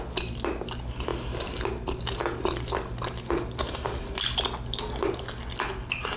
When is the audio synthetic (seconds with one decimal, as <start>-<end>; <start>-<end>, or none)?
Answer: none